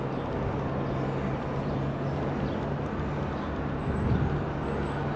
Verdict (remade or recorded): recorded